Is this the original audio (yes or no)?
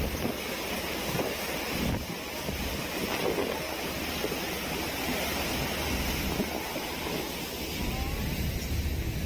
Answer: yes